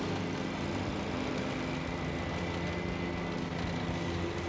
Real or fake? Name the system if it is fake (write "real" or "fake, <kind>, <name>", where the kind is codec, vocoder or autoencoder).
real